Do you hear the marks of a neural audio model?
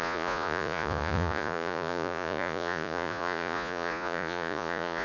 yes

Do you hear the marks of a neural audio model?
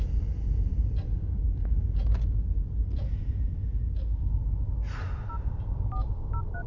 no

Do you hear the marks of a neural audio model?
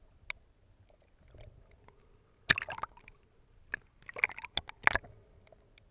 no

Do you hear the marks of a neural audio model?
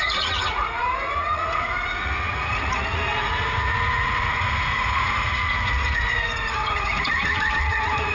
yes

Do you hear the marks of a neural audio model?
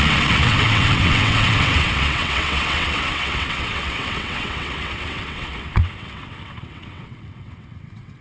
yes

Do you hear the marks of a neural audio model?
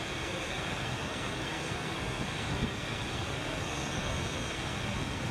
yes